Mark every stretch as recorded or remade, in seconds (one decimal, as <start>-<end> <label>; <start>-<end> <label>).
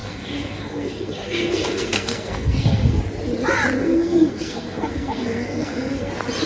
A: 0.0-3.0 remade; 3.0-3.8 recorded; 3.8-6.1 remade; 6.1-6.5 recorded